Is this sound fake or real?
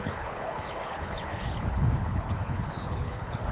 fake